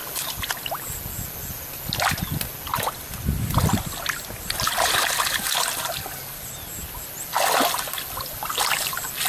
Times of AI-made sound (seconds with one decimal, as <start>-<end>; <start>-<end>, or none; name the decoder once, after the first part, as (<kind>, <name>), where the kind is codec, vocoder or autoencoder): none